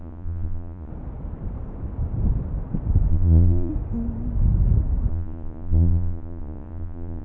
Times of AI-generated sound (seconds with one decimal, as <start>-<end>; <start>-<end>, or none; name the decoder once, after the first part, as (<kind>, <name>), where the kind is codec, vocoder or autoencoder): 0.0-0.9 (vocoder, Vocos); 3.1-3.7; 5.1-7.2